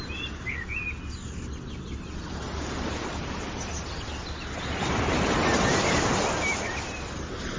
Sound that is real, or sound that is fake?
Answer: real